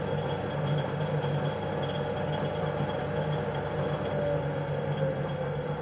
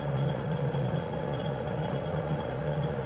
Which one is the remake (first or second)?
second